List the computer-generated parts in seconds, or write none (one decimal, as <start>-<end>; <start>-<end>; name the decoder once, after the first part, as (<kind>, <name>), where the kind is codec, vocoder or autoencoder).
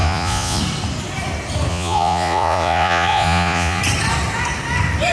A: 0.0-0.6 (vocoder, Vocos); 1.7-3.8